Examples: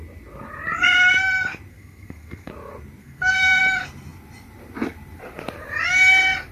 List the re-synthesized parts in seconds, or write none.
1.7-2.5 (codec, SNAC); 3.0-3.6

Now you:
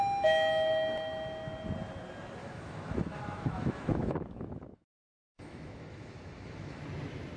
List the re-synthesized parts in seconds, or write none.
2.4-6.8 (autoencoder, DAC-VAE)

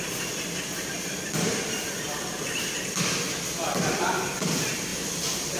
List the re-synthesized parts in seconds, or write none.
0.0-4.9 (vocoder, BigVGAN v2)

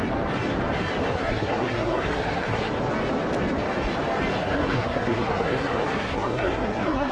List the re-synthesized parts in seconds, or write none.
1.0-2.7 (codec, SNAC); 4.4-7.1

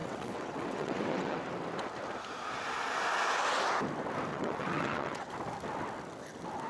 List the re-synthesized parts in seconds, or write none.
0.0-1.5 (vocoder, WaveNeXt); 4.3-5.3

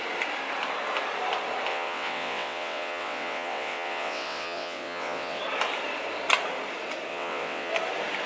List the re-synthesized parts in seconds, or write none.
1.7-5.4 (vocoder, WaveNeXt); 7.1-7.7

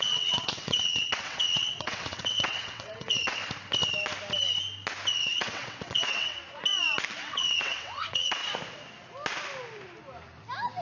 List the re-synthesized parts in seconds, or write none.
0.0-3.4 (vocoder, WaveNeXt); 5.1-6.4; 7.2-8.4